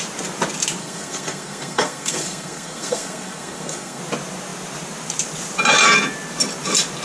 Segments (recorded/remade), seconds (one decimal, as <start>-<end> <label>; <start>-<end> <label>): 0.0-0.8 recorded; 0.8-4.0 remade; 4.0-7.0 recorded